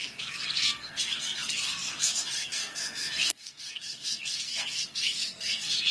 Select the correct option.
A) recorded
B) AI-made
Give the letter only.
B